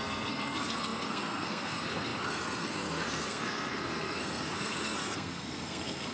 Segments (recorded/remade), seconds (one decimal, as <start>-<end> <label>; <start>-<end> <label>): 0.0-6.1 remade